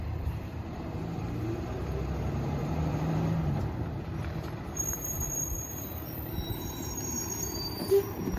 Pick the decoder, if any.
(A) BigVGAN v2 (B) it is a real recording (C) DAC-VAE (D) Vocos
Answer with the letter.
A